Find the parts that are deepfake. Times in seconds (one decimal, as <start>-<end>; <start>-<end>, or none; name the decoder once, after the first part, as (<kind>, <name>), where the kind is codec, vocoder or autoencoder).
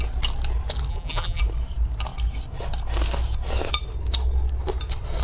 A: 0.9-1.4 (vocoder, BigVGAN v2)